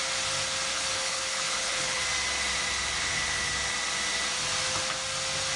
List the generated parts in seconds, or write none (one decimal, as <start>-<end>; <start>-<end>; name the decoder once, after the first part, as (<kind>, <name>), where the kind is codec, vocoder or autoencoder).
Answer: 0.7-2.0 (codec, HILCodec)